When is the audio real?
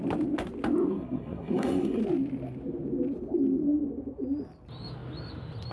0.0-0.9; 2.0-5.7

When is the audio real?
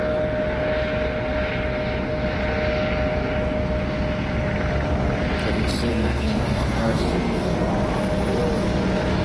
0.0-5.9; 7.7-9.2